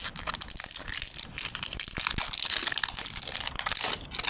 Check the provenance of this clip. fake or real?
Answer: real